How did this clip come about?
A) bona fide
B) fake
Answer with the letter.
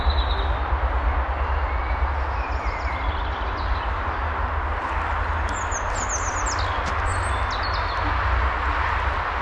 A